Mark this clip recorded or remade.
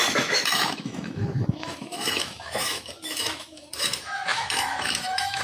remade